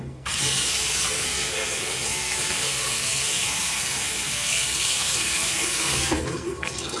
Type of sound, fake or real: fake